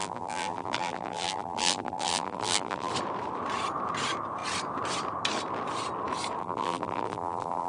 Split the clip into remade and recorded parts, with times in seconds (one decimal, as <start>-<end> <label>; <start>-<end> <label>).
0.0-2.9 remade; 2.9-6.4 recorded; 6.4-7.7 remade